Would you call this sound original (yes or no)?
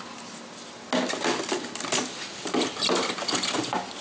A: yes